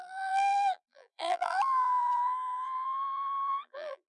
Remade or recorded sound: remade